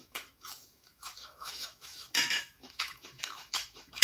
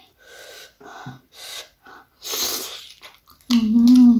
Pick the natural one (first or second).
second